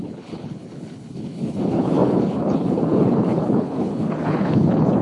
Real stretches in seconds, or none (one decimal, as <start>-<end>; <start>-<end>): none